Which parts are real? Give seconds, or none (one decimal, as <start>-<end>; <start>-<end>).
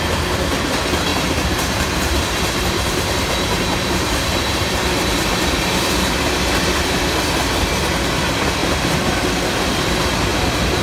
0.0-1.1; 5.9-8.6; 9.1-10.3